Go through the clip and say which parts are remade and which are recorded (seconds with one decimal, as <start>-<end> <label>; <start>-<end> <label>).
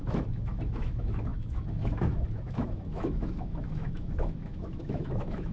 0.0-5.5 remade